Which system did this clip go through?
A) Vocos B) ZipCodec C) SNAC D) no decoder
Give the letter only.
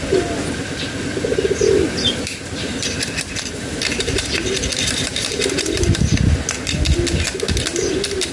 D